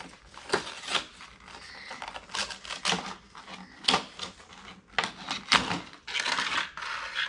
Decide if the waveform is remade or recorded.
recorded